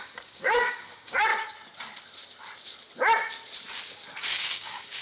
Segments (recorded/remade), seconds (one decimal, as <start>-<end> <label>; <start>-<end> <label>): 0.0-1.3 remade; 1.3-4.3 recorded; 4.3-5.0 remade